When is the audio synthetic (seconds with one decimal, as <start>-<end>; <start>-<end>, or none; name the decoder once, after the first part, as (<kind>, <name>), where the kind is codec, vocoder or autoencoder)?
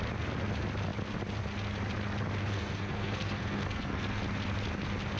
2.4-4.2 (codec, SNAC)